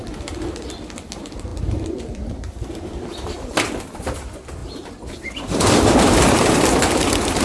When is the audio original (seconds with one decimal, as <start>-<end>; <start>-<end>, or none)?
none